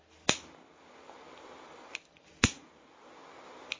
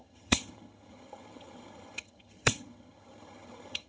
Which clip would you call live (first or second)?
first